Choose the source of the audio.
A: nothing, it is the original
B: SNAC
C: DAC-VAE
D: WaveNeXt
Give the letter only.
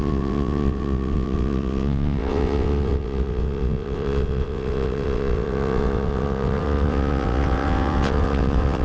D